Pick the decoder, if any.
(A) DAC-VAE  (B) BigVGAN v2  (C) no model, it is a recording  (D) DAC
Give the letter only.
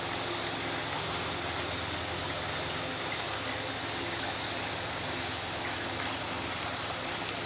C